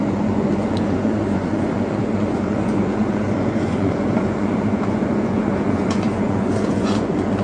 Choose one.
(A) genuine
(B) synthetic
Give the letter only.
B